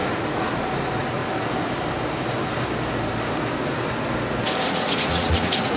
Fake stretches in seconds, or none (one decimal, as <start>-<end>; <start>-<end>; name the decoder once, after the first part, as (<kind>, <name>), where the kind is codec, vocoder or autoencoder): 0.0-1.2 (vocoder, Vocos); 4.7-5.8